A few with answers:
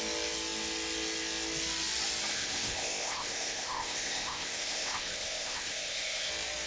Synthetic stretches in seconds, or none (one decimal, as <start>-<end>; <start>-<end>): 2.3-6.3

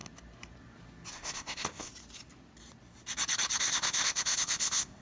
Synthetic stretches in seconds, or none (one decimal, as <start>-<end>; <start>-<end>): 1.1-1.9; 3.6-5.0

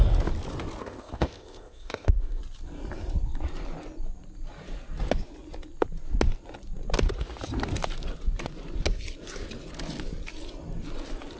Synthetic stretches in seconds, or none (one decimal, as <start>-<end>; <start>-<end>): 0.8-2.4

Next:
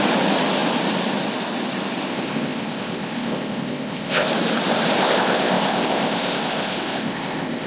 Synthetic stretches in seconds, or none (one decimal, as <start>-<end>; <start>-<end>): 2.1-4.3; 5.0-7.7